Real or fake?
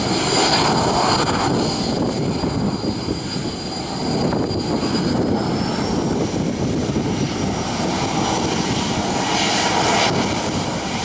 real